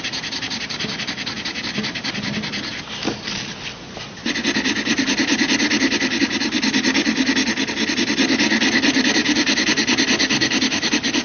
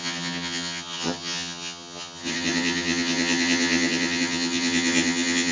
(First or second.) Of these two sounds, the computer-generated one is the second